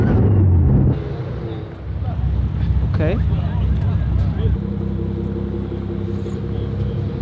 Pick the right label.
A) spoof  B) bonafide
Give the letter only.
B